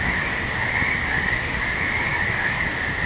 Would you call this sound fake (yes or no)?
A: no